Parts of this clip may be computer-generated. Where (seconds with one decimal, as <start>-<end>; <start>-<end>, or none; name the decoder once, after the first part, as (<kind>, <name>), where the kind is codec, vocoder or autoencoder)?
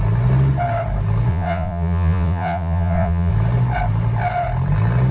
1.3-3.3 (vocoder, Vocos)